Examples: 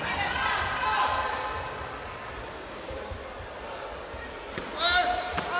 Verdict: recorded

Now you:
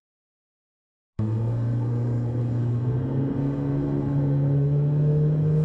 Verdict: remade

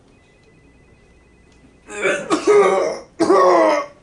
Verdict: recorded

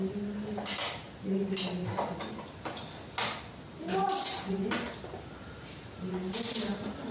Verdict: recorded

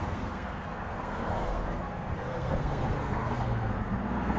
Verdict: remade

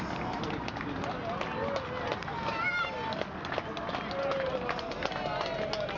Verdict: recorded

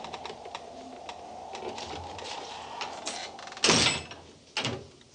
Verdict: recorded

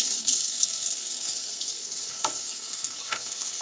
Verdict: remade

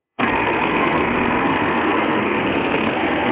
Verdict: remade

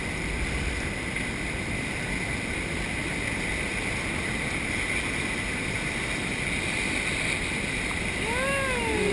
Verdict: recorded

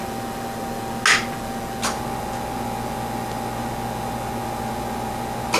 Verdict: recorded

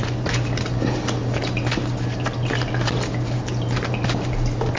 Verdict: recorded